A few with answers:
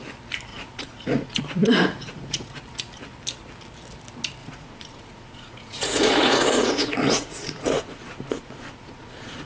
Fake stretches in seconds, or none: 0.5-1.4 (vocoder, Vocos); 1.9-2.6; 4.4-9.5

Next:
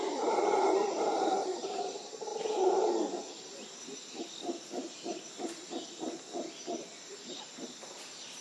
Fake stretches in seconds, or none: 0.0-2.3 (vocoder, BigVGAN v2); 7.1-8.4

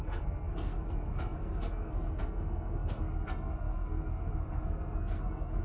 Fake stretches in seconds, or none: 0.0-5.6 (codec, SNAC)